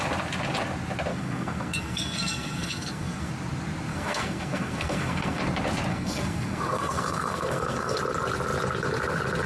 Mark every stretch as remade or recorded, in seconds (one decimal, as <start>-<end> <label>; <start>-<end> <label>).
0.0-1.1 recorded; 1.1-3.3 remade; 3.3-3.9 recorded; 3.9-5.4 remade; 5.4-5.9 recorded; 5.9-8.0 remade; 8.0-9.5 recorded